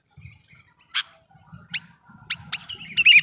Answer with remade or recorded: recorded